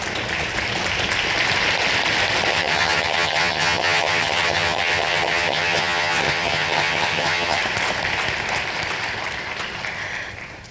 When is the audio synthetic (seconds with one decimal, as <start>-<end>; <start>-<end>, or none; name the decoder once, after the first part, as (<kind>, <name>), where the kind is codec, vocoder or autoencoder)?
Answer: 2.5-7.6 (vocoder, HiFi-GAN)